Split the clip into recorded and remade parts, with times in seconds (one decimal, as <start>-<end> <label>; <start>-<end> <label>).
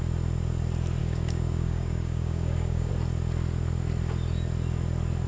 0.0-1.0 recorded; 1.0-2.9 remade; 2.9-5.3 recorded